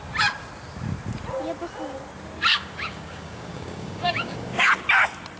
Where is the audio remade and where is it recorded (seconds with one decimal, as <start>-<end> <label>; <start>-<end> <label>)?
0.0-2.5 recorded; 2.5-4.7 remade; 4.7-5.4 recorded